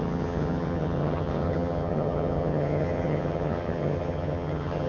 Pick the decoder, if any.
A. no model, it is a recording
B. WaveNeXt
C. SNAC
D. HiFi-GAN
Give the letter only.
D